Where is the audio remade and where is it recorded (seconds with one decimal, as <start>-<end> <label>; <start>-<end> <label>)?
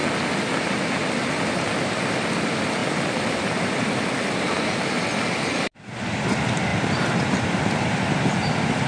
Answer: 0.0-6.7 recorded; 6.7-8.0 remade; 8.0-8.9 recorded